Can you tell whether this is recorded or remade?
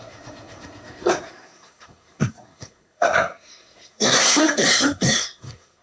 remade